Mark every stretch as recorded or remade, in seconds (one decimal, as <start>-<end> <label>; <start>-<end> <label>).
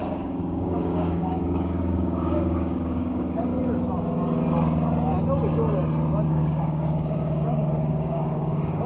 0.0-3.5 remade; 3.5-6.3 recorded; 6.3-8.9 remade